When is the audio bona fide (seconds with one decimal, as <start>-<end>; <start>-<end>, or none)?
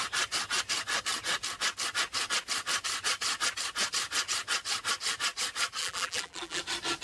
0.0-5.8; 6.6-7.0